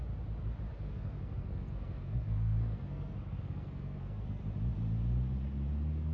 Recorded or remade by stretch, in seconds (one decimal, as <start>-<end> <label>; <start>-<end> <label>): 0.0-0.7 recorded; 0.7-4.4 remade; 4.4-6.1 recorded